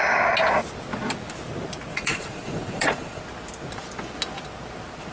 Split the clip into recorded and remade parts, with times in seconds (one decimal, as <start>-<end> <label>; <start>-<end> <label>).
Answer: 0.0-1.9 recorded; 1.9-3.2 remade; 3.2-5.1 recorded